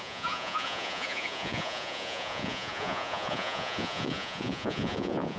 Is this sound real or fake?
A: fake